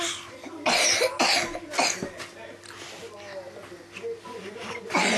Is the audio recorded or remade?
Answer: recorded